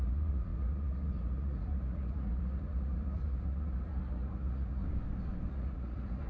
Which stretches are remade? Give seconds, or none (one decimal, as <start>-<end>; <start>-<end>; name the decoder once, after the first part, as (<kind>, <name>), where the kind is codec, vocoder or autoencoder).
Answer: 0.0-4.8 (vocoder, Vocos); 5.5-6.3